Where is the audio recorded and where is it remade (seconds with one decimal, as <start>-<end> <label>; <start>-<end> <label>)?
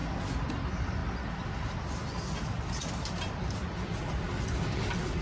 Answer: 0.0-0.5 recorded; 0.5-5.2 remade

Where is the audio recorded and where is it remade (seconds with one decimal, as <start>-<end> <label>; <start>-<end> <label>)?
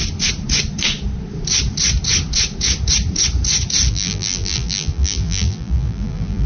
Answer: 0.0-3.9 recorded; 3.9-6.5 remade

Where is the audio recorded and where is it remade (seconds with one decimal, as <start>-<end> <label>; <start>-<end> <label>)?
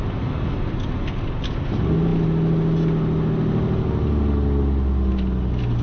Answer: 0.0-5.8 recorded